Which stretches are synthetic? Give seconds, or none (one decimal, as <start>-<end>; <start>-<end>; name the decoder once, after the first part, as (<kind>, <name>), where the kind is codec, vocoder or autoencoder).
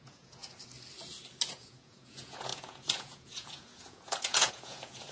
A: 0.0-0.4 (vocoder, Vocos); 1.5-5.1